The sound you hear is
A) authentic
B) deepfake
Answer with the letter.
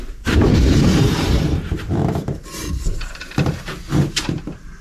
B